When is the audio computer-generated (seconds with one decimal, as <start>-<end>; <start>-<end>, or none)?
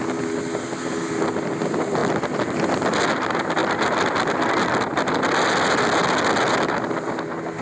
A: none